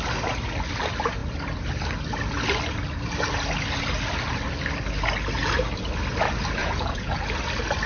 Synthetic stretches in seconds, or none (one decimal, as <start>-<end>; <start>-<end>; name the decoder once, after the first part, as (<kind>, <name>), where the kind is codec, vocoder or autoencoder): 6.6-7.2 (vocoder, Vocos)